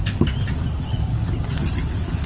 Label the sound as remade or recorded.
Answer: recorded